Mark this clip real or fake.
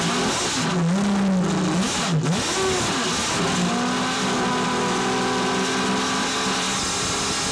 real